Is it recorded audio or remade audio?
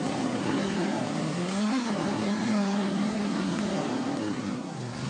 remade